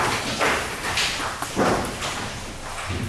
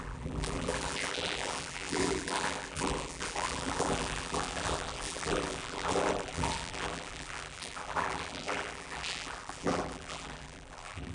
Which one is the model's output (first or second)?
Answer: second